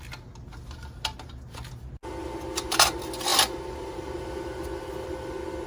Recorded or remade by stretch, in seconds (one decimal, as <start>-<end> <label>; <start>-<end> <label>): 0.0-3.3 recorded; 3.3-4.2 remade; 4.2-5.7 recorded